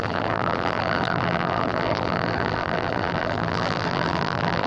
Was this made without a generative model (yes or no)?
no